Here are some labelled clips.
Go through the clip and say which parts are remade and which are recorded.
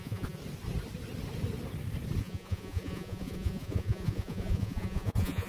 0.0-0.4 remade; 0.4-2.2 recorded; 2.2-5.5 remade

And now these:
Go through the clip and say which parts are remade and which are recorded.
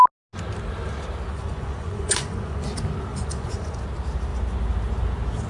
0.0-1.3 recorded; 1.3-2.7 remade; 2.7-3.1 recorded; 3.1-3.8 remade; 3.8-5.5 recorded